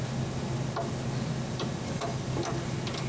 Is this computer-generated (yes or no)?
no